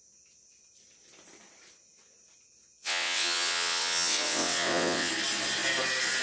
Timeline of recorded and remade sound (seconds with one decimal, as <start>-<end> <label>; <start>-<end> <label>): 0.0-2.8 recorded; 2.8-5.1 remade; 5.1-6.2 recorded